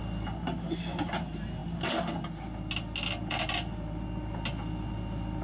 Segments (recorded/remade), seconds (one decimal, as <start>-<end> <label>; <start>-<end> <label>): 0.0-5.4 recorded

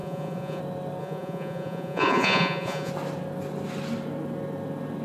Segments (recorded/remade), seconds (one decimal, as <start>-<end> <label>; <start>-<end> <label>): 0.0-0.6 remade; 0.6-1.0 recorded; 1.0-2.9 remade; 2.9-5.0 recorded

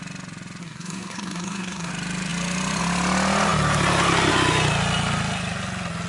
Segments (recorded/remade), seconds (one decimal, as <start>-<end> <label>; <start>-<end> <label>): 0.0-0.6 recorded; 0.6-1.9 remade; 1.9-6.1 recorded

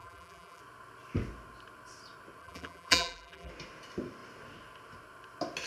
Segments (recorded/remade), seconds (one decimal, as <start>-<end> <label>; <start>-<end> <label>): 0.0-0.6 remade; 0.6-2.4 recorded; 2.4-3.5 remade; 3.5-5.7 recorded

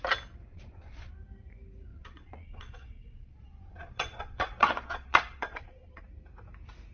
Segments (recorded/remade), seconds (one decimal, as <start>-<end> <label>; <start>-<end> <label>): 0.0-0.5 recorded; 0.5-1.1 remade; 1.1-1.9 recorded; 1.9-6.0 remade; 6.0-6.9 recorded

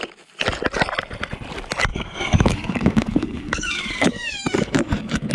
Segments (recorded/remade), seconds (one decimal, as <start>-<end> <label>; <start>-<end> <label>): 0.0-1.9 recorded; 1.9-5.3 remade

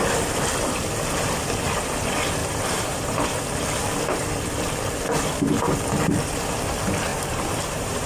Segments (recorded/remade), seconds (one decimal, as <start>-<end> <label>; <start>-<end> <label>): 0.0-2.4 recorded; 2.4-3.4 remade; 3.4-7.1 recorded; 7.1-8.1 remade